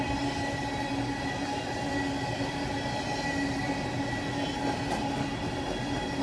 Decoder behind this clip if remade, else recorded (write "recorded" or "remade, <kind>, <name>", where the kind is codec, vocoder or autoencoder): recorded